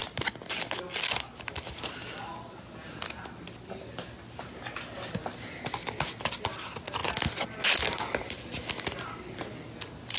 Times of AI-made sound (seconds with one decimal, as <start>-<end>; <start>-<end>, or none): none